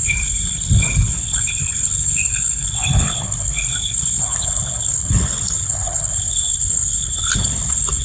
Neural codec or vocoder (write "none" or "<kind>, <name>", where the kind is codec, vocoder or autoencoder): codec, HILCodec